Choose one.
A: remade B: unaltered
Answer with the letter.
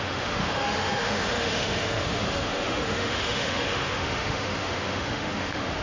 A